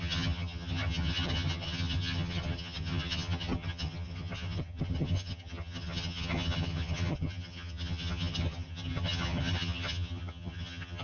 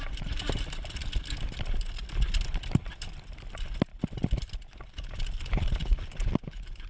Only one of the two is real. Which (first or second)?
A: second